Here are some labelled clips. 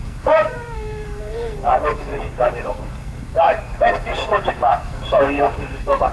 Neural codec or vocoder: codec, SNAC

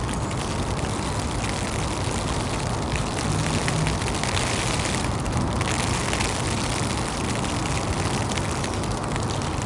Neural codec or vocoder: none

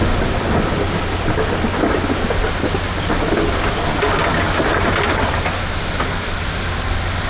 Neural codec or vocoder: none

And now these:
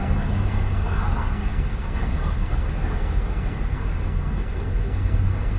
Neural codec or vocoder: codec, SNAC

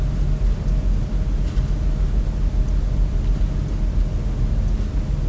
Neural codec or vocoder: none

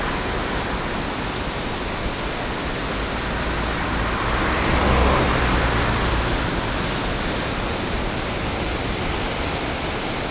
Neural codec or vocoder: none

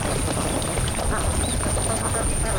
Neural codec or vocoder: none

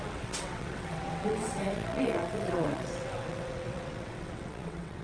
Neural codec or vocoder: vocoder, WaveNeXt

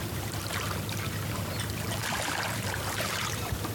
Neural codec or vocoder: vocoder, BigVGAN v2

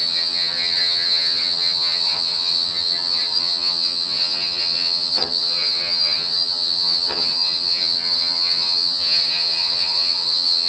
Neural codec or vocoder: vocoder, HiFi-GAN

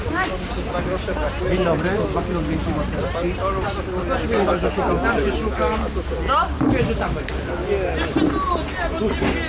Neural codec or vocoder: none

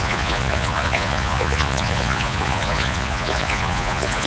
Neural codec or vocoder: vocoder, Vocos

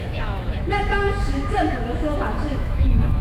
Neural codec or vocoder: autoencoder, DAC-VAE